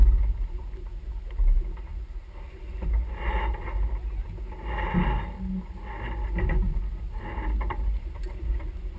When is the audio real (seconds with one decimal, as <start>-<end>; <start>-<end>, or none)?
0.0-9.0